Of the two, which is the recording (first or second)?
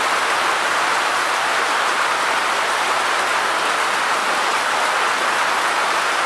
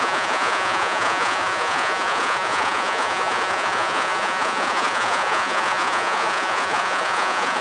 first